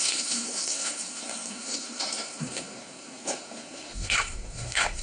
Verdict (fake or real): fake